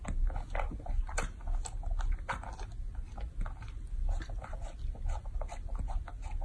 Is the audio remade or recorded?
recorded